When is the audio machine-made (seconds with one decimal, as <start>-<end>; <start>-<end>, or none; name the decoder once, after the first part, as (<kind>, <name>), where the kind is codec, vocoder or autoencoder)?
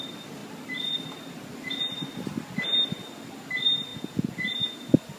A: 3.9-4.7 (vocoder, Vocos)